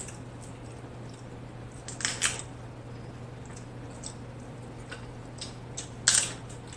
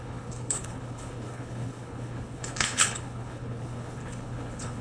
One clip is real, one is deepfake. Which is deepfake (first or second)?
second